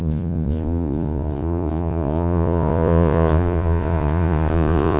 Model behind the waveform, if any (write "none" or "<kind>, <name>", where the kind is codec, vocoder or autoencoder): vocoder, Vocos